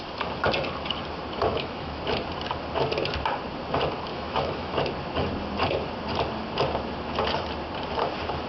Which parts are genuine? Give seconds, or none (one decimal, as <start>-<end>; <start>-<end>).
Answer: 0.0-1.5; 2.0-4.1; 4.8-8.5